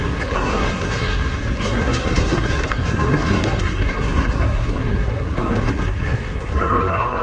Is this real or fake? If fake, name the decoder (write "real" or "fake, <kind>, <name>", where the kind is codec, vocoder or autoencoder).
fake, codec, SNAC